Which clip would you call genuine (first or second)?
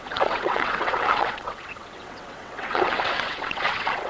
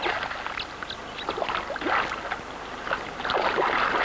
second